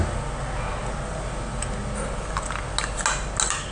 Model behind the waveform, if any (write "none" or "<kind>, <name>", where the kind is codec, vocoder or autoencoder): none